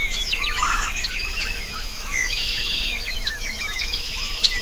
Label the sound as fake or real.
fake